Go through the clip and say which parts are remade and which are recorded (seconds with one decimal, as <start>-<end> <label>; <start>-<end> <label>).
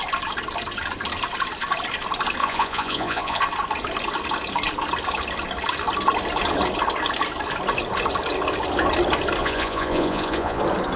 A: 0.0-2.4 recorded; 2.4-3.4 remade; 3.4-9.4 recorded; 9.4-10.6 remade; 10.6-11.0 recorded